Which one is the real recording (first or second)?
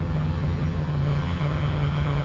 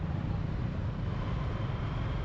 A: second